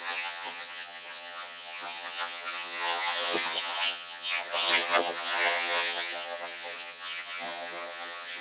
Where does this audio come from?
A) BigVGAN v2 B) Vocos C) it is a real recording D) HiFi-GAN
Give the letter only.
D